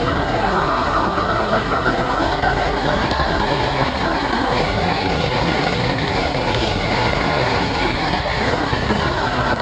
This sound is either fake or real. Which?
fake